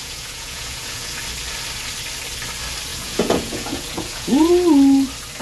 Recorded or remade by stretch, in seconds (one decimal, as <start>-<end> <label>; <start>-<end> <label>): 0.0-1.2 remade; 1.2-2.9 recorded; 2.9-4.5 remade; 4.5-5.4 recorded

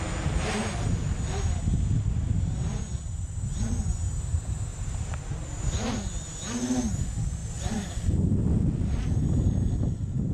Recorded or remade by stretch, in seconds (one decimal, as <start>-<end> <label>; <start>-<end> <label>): 0.0-4.7 recorded; 4.7-5.3 remade; 5.3-7.4 recorded; 7.4-8.0 remade; 8.0-10.3 recorded

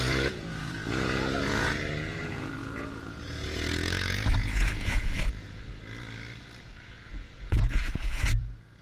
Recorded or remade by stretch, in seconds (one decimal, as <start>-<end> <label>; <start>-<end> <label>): 0.0-5.7 remade; 5.7-6.6 recorded; 6.6-8.8 remade

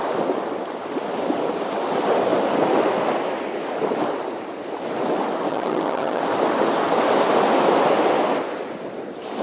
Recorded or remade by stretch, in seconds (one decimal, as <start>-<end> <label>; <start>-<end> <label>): 0.0-5.5 recorded; 5.5-6.2 remade; 6.2-9.4 recorded

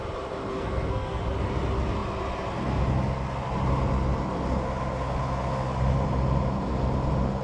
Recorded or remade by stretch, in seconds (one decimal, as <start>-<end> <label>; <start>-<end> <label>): 0.0-0.5 recorded; 0.5-1.2 remade; 1.2-7.4 recorded

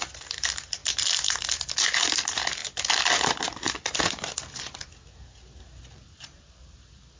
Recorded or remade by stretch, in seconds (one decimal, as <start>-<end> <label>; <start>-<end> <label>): 0.0-7.2 recorded

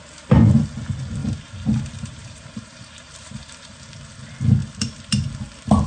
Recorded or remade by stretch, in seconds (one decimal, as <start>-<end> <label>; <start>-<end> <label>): 0.0-1.2 recorded; 1.2-4.0 remade; 4.0-5.9 recorded